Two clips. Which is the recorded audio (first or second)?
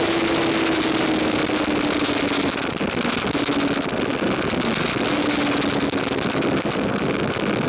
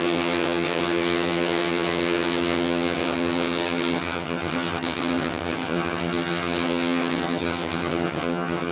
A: first